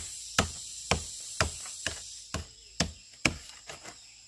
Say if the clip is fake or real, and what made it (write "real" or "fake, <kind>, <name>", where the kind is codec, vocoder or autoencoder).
real